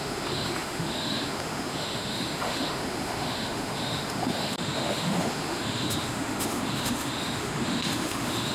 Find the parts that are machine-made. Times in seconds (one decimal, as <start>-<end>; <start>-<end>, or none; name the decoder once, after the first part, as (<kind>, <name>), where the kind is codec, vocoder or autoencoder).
0.0-8.5 (autoencoder, DAC-VAE)